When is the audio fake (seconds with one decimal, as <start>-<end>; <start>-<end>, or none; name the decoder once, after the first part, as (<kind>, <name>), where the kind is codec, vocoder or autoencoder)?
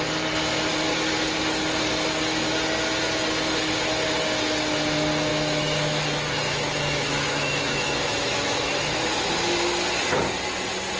5.3-9.3 (autoencoder, DAC-VAE)